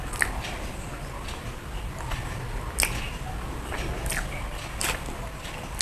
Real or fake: real